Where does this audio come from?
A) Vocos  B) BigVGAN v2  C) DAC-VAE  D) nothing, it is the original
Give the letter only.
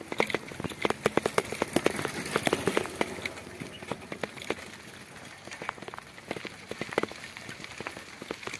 D